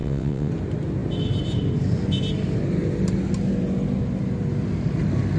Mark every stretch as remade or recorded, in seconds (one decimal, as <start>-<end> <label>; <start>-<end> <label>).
0.0-0.5 remade; 0.5-5.4 recorded